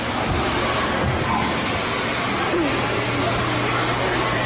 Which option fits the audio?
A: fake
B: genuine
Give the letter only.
B